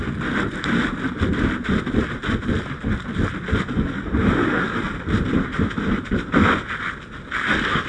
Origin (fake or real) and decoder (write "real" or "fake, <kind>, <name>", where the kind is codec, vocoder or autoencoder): real